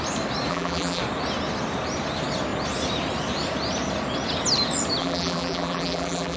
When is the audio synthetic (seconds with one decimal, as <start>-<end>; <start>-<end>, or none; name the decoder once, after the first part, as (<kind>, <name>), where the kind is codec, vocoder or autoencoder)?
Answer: 0.5-1.0 (vocoder, BigVGAN v2); 5.0-6.4